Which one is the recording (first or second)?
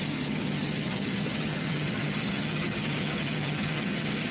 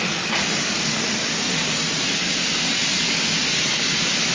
second